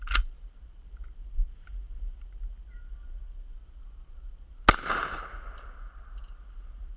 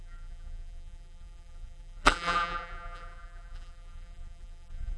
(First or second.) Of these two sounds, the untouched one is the first